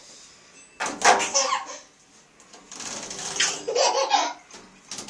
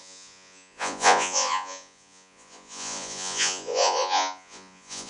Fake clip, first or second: second